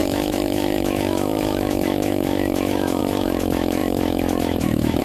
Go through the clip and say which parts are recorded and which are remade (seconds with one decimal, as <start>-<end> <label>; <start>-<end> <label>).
0.0-5.0 remade